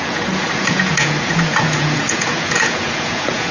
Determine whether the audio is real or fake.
fake